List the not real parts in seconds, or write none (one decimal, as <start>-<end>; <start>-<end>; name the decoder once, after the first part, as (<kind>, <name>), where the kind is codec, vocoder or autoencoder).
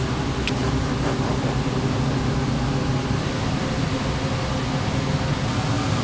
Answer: none